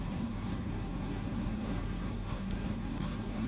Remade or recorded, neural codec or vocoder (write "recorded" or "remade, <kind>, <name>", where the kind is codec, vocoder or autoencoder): remade, codec, SNAC